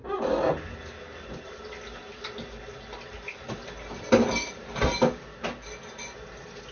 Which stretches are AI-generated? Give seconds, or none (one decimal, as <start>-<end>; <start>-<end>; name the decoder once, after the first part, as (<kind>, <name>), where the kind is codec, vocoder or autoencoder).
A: none